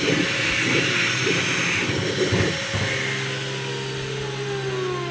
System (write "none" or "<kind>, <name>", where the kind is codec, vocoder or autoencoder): none